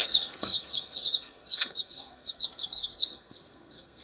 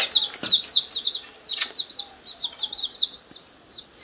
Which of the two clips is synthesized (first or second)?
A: first